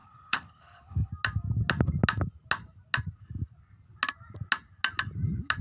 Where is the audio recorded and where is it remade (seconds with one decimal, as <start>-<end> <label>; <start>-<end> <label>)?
0.0-1.1 remade; 1.1-5.6 recorded